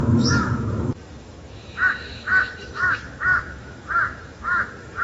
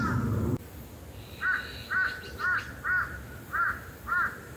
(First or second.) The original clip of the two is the second